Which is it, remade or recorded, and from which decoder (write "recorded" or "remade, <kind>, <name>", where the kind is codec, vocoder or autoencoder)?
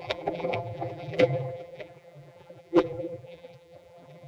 remade, vocoder, BigVGAN v2